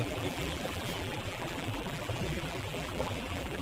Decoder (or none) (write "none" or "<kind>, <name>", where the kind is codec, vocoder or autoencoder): vocoder, BigVGAN v2